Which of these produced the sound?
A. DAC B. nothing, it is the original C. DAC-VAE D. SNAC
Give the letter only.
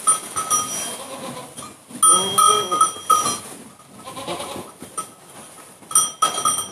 B